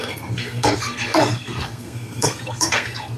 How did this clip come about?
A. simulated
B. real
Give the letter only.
A